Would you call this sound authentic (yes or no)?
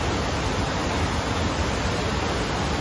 yes